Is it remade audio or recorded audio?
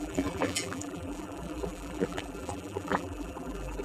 remade